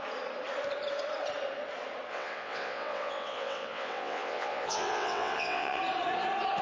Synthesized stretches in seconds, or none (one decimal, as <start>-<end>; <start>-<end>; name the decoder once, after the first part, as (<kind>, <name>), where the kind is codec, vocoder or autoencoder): 2.1-5.8 (vocoder, WaveNeXt)